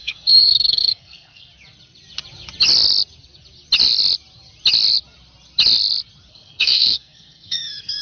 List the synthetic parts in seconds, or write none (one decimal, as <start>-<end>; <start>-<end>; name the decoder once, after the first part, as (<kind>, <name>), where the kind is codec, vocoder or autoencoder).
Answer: 0.0-1.5 (codec, SNAC); 6.3-8.0